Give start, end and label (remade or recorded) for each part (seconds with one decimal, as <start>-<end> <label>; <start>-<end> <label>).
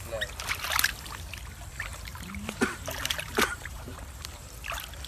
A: 0.0-2.1 recorded; 2.1-3.8 remade; 3.8-5.1 recorded